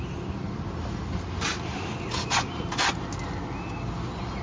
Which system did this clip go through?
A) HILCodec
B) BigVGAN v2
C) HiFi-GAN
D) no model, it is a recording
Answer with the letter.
D